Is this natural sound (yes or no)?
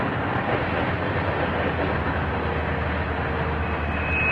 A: yes